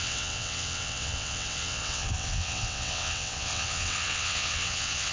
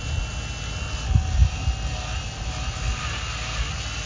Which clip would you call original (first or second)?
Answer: second